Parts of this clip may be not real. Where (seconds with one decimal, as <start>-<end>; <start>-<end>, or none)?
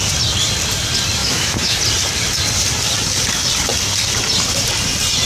1.2-1.8